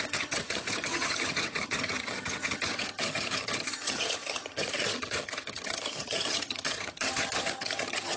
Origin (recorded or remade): remade